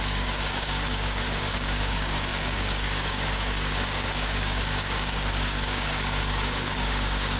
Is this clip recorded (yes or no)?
no